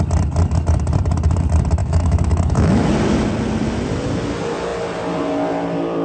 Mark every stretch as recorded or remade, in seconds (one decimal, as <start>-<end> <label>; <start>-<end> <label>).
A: 0.0-1.8 recorded; 1.8-2.9 remade; 2.9-6.0 recorded